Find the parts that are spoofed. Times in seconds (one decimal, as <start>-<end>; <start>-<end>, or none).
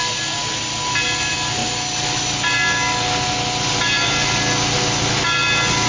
none